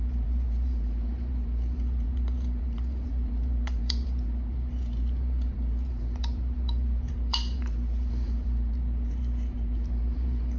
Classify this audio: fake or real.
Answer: fake